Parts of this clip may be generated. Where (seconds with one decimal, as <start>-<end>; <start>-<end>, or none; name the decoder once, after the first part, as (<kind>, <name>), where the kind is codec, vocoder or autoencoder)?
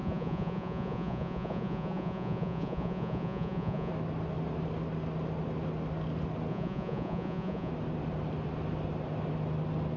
0.0-3.9 (vocoder, Vocos); 6.5-7.7